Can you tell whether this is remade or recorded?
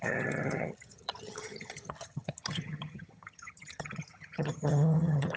remade